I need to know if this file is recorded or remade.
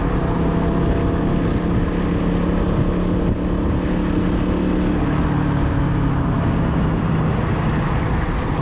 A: recorded